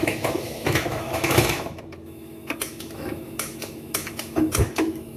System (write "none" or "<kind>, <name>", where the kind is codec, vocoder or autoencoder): autoencoder, DAC-VAE